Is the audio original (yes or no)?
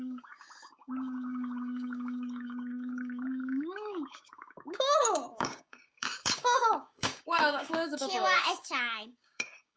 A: no